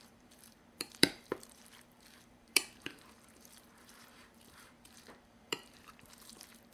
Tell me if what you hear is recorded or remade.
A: remade